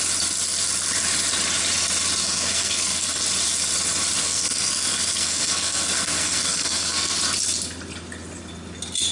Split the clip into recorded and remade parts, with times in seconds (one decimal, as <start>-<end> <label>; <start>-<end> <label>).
0.0-2.2 recorded; 2.2-3.2 remade; 3.2-4.2 recorded; 4.2-7.2 remade; 7.2-9.1 recorded